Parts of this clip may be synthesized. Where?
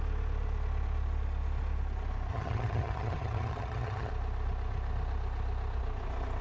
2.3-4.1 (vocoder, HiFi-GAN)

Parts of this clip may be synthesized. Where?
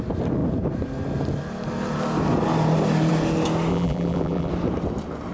3.7-4.5 (vocoder, BigVGAN v2)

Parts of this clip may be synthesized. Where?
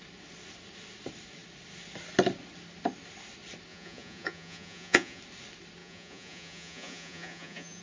3.7-5.2 (vocoder, Vocos); 5.8-7.8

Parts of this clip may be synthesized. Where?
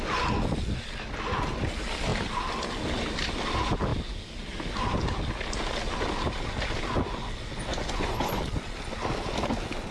7.7-8.4 (vocoder, Vocos)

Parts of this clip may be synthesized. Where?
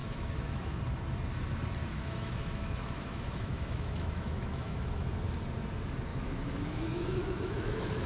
0.0-0.8 (autoencoder, DAC-VAE); 1.8-5.1; 6.1-8.1